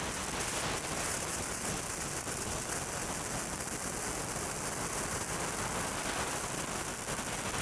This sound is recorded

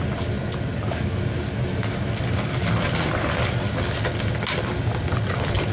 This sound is recorded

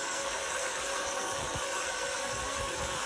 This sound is remade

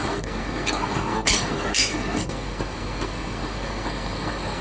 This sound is remade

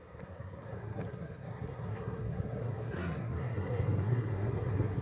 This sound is remade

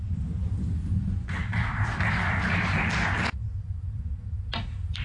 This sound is recorded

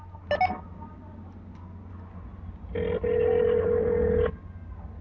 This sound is recorded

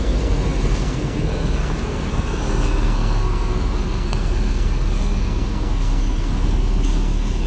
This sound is remade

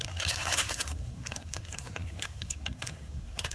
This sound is remade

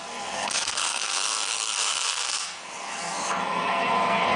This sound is remade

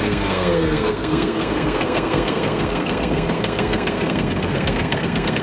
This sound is remade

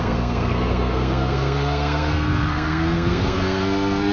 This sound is remade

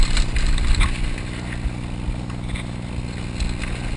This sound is recorded